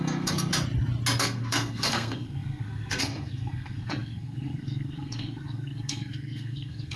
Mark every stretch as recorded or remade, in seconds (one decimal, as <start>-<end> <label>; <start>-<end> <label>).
0.0-0.5 remade; 0.5-1.2 recorded; 1.2-7.0 remade